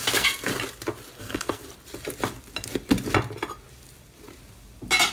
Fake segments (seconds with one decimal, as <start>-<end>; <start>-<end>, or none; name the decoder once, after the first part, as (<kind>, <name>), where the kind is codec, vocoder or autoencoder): 0.0-0.5 (codec, SNAC); 1.2-1.6